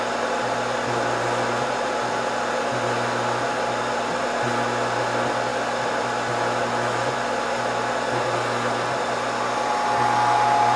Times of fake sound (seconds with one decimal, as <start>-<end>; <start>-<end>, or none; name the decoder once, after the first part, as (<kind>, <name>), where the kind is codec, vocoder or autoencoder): none